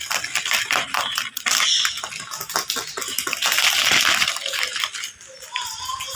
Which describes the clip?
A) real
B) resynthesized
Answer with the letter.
A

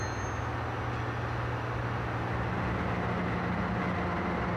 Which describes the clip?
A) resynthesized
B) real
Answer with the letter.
B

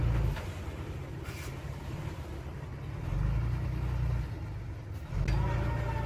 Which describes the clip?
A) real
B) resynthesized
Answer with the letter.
A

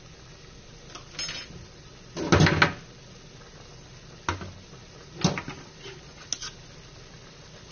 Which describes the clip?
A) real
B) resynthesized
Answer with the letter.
A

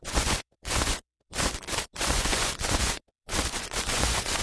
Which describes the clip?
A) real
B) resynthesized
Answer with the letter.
B